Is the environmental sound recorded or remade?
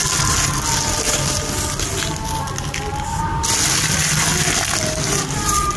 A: recorded